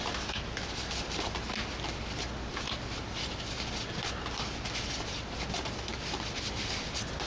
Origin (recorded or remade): recorded